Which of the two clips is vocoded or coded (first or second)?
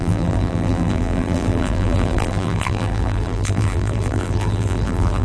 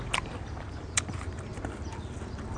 first